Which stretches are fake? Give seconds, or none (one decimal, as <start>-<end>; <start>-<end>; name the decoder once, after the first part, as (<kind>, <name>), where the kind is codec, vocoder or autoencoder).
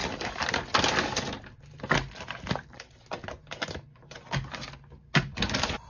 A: none